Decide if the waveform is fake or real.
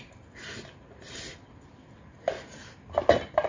real